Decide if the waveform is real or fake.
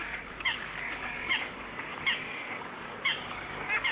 fake